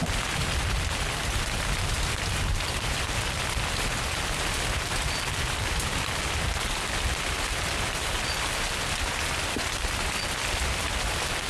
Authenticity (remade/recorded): recorded